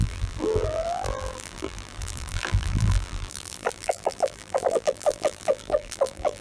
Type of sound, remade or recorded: remade